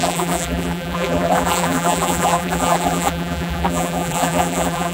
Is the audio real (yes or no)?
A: no